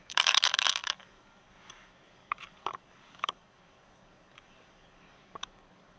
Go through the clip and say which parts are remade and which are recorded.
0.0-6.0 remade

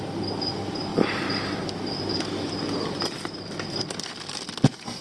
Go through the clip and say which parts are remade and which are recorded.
0.0-5.0 recorded

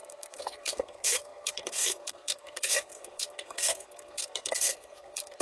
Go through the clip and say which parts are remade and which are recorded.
0.0-5.4 remade

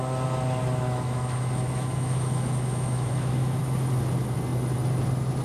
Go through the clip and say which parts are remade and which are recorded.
0.0-0.6 recorded; 0.6-3.6 remade; 3.6-5.4 recorded

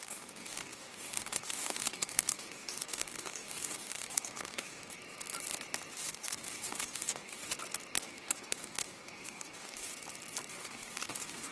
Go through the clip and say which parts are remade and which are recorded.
0.0-5.0 remade; 5.0-5.9 recorded; 5.9-7.4 remade; 7.4-8.0 recorded; 8.0-9.9 remade; 9.9-10.5 recorded; 10.5-11.5 remade